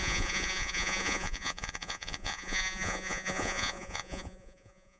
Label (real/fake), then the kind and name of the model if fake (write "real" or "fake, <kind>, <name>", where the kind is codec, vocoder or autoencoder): fake, vocoder, Vocos